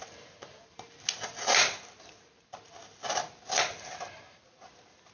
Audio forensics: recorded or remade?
recorded